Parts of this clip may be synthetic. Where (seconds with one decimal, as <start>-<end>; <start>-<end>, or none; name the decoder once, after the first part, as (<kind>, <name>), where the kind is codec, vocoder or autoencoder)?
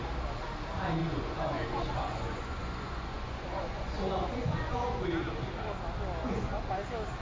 1.0-5.3 (vocoder, Vocos); 6.2-6.7